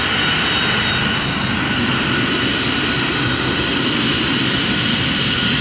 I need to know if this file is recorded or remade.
remade